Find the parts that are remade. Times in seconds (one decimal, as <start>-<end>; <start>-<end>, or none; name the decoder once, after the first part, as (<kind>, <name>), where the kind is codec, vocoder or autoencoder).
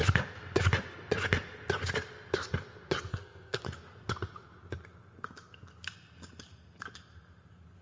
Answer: 3.1-3.6 (codec, SNAC)